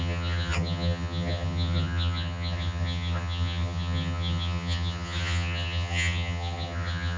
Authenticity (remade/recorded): remade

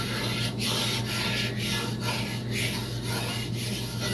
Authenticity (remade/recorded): recorded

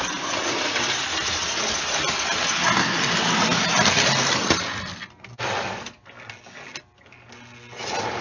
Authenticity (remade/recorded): recorded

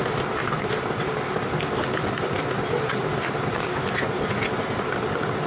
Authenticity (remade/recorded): recorded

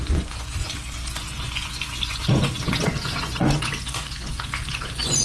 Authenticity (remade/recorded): remade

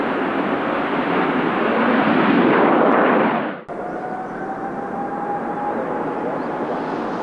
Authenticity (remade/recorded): recorded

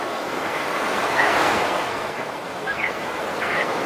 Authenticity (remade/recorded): remade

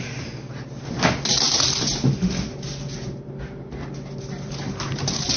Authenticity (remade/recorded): recorded